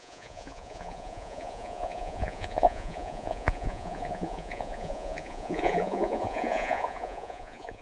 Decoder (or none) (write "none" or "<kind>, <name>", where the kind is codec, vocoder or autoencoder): vocoder, Vocos